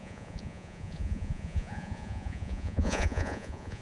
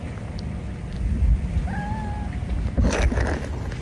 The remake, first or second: first